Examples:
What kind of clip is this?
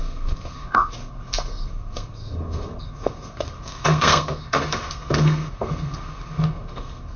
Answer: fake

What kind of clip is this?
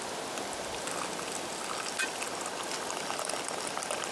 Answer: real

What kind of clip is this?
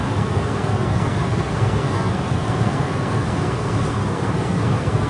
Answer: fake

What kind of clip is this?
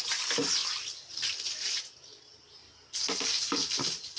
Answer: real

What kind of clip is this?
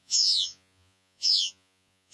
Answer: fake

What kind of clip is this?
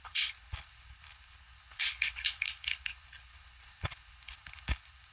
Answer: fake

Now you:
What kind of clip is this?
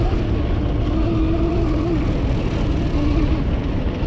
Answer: real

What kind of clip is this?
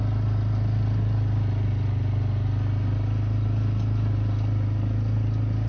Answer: real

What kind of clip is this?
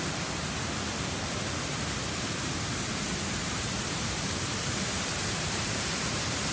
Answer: fake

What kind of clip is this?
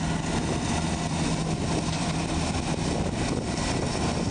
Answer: real